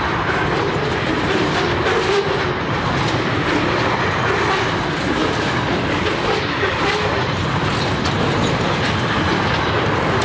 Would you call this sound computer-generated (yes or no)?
no